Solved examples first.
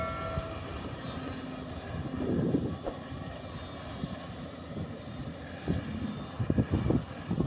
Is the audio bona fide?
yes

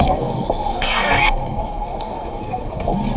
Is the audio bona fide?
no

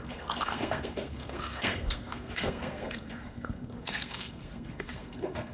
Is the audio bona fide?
no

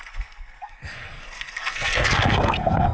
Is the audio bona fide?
no